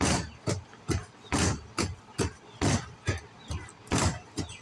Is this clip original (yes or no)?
yes